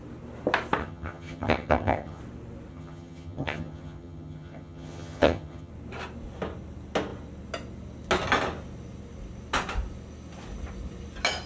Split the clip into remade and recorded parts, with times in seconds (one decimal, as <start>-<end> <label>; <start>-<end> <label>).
0.0-0.8 recorded; 0.8-2.2 remade; 2.2-2.7 recorded; 2.7-5.7 remade; 5.7-11.5 recorded